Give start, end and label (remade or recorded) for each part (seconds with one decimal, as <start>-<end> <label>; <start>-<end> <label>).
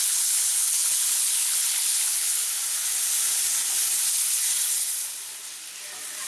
0.0-2.4 remade; 2.4-6.3 recorded